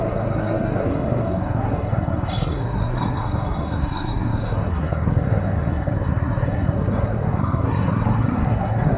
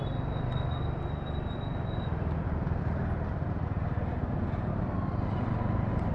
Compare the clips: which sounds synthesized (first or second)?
first